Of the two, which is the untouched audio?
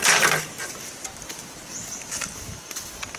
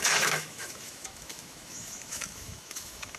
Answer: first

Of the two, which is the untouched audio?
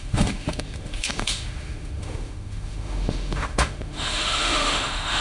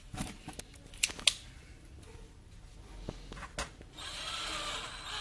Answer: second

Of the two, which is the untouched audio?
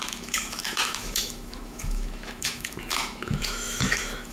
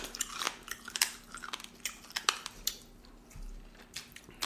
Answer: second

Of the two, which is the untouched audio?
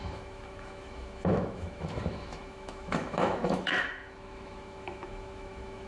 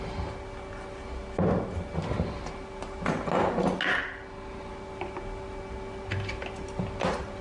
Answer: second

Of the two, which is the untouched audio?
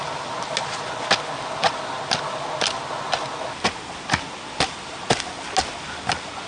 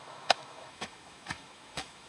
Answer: first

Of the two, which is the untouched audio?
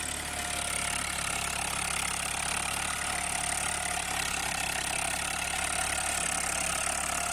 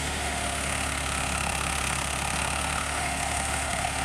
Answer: first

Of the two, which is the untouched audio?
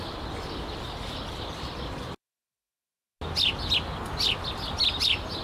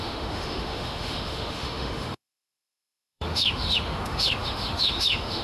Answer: first